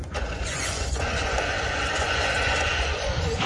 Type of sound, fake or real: fake